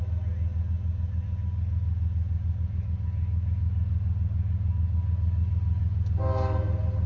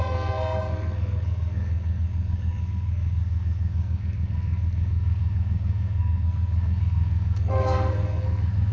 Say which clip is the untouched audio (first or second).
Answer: first